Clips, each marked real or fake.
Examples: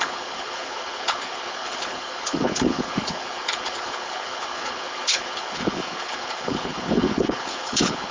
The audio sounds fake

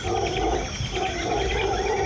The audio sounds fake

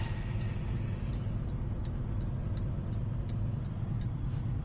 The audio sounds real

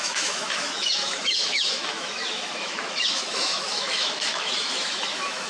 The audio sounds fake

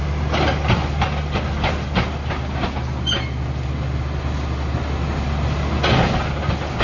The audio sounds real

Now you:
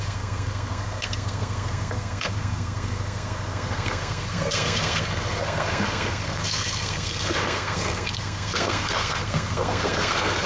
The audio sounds fake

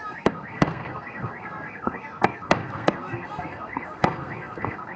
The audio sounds fake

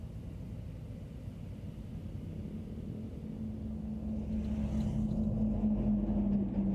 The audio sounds real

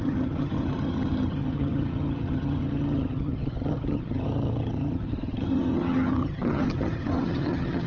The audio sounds fake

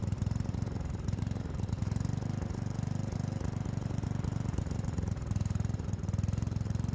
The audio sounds fake